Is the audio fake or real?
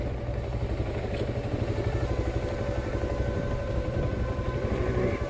real